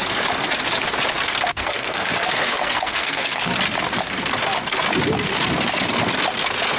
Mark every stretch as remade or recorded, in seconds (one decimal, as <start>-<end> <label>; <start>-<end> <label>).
0.0-1.5 recorded; 1.5-3.5 remade; 3.5-6.8 recorded